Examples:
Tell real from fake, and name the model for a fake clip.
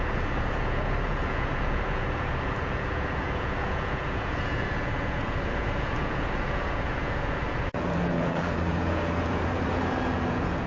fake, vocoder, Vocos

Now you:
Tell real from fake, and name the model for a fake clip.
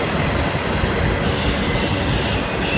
real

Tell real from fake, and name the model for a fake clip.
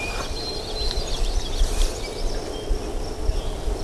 real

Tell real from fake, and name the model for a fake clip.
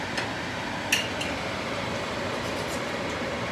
real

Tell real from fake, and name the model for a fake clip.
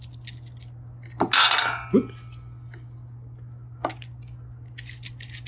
real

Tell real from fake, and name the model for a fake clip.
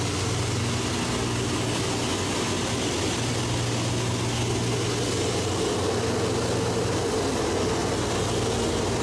real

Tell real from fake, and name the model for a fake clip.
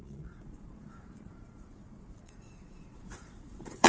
fake, vocoder, Vocos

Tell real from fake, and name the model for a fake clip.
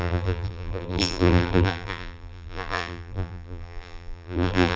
fake, vocoder, BigVGAN v2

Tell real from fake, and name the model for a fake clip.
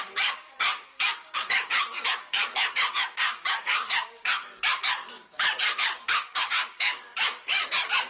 fake, codec, DAC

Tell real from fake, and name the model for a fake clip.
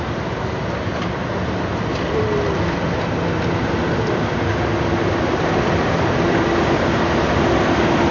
real